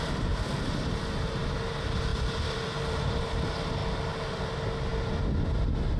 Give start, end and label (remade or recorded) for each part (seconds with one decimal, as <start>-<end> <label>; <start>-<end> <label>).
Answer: 0.0-2.1 recorded; 2.1-3.2 remade; 3.2-4.9 recorded; 4.9-6.0 remade